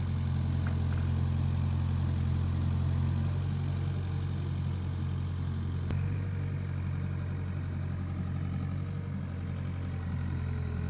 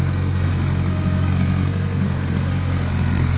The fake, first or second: second